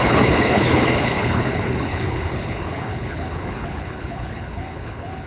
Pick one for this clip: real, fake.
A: fake